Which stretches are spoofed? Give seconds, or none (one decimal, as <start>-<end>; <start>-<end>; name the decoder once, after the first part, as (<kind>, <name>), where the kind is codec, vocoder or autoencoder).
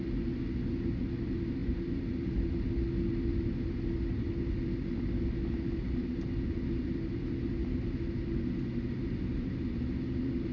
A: none